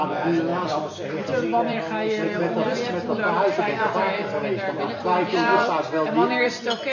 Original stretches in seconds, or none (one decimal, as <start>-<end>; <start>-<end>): 0.5-1.2